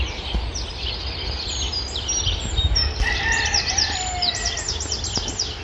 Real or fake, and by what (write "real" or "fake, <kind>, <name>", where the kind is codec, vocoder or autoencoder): real